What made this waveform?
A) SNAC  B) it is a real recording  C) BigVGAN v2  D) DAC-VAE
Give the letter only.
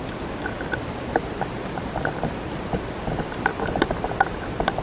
C